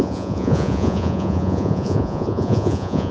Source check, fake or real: fake